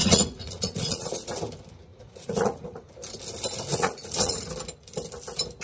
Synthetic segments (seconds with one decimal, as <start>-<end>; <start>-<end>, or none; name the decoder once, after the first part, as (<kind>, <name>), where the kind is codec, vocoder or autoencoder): 0.0-1.2 (vocoder, Vocos); 1.9-2.9; 3.7-4.5